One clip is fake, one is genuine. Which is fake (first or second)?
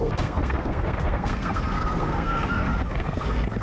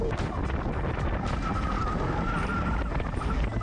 first